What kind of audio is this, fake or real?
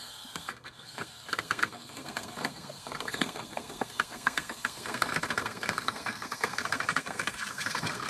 fake